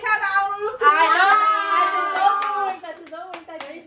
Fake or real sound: real